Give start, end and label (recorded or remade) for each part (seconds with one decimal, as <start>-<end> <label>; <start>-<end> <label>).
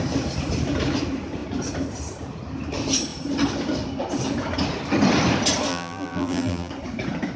0.0-5.7 recorded; 5.7-6.7 remade; 6.7-7.4 recorded